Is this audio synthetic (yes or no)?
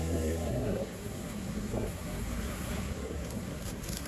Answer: yes